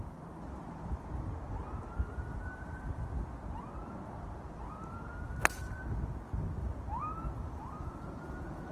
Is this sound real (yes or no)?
yes